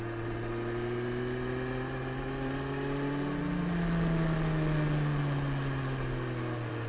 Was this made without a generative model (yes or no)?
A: yes